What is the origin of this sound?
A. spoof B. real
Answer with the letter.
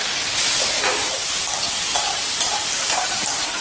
B